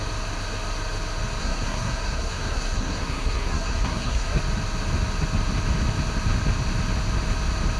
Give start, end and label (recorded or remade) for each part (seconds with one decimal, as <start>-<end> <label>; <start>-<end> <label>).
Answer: 0.0-1.4 recorded; 1.4-4.4 remade; 4.4-7.8 recorded